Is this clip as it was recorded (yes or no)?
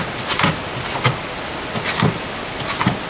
yes